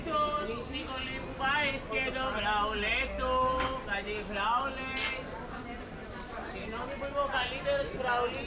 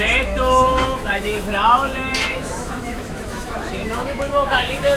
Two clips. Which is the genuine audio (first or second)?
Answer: first